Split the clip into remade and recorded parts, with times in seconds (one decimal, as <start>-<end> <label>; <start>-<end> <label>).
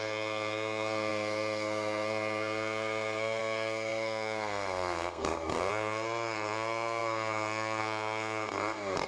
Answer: 0.0-9.1 remade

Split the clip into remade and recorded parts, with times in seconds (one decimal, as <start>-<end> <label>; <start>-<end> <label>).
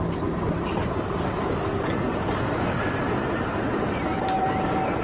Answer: 0.0-5.0 recorded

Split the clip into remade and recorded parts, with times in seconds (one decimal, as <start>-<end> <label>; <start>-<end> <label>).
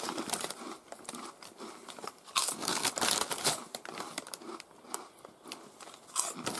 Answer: 0.0-2.4 recorded; 2.4-2.9 remade; 2.9-6.6 recorded